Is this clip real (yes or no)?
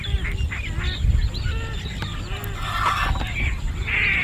yes